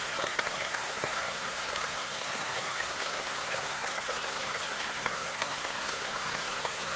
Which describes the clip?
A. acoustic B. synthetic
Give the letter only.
B